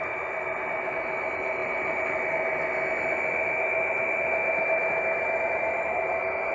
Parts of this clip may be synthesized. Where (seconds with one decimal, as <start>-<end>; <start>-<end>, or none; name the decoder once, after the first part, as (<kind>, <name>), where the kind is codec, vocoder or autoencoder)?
none